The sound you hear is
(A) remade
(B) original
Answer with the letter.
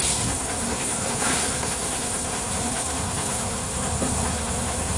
A